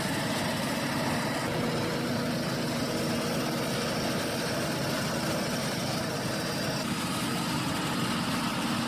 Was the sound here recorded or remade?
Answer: recorded